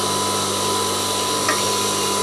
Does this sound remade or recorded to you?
recorded